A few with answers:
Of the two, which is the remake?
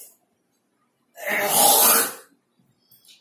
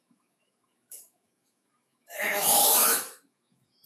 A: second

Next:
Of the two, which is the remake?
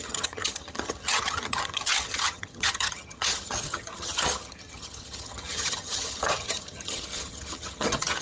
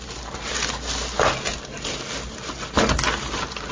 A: first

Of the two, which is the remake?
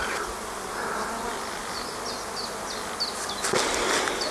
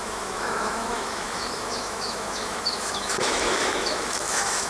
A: second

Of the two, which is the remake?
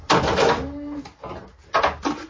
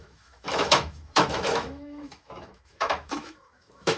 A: second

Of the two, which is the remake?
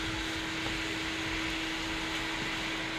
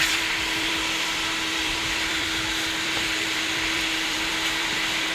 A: second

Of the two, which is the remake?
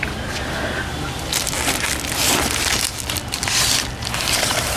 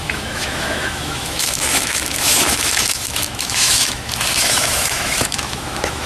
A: second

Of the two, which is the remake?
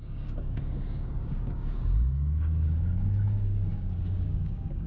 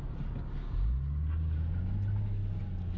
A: first